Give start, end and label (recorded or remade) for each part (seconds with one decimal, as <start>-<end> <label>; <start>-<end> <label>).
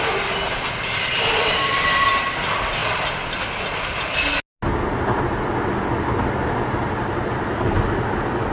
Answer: 0.0-8.5 recorded